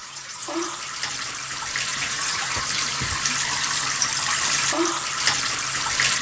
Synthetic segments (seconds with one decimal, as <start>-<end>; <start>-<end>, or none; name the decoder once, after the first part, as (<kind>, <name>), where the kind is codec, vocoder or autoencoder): 0.0-0.8 (vocoder, Vocos); 1.9-2.6